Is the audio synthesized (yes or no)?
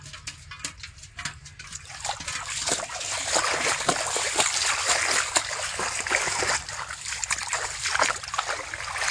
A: no